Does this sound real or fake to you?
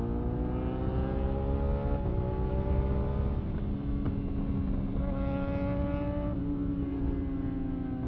real